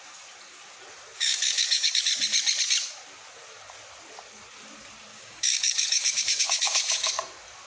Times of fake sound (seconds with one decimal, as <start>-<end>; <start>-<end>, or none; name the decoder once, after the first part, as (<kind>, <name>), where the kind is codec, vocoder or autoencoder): 1.2-2.1 (codec, DAC); 5.1-7.1